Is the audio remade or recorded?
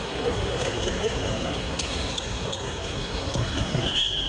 remade